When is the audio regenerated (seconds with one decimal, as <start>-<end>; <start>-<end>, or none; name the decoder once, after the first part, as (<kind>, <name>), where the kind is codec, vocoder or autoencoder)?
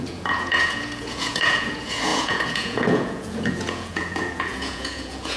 0.0-5.4 (vocoder, Vocos)